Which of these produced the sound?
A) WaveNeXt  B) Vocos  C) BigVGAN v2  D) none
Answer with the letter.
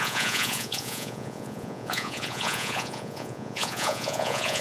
B